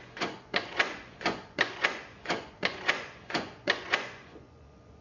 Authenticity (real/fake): fake